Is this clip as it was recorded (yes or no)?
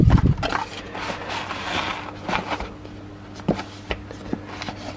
yes